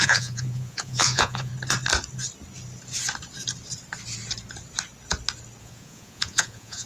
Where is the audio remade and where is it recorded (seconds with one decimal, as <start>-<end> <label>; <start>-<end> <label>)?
0.0-1.5 remade; 1.5-5.6 recorded; 5.6-6.9 remade